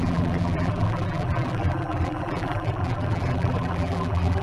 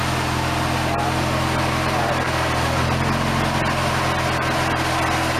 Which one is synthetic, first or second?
first